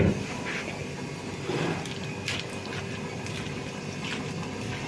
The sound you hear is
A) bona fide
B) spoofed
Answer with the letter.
A